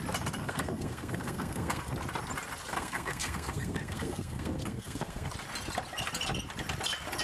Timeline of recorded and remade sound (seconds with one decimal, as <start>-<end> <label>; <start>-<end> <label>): 0.0-0.4 recorded; 0.4-1.8 remade; 1.8-2.7 recorded; 2.7-5.3 remade; 5.3-7.2 recorded